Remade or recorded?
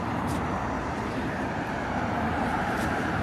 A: remade